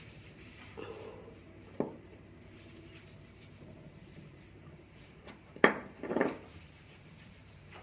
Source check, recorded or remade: remade